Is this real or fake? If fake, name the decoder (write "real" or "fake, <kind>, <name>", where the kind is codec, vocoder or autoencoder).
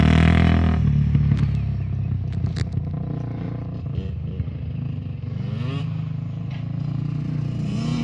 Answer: real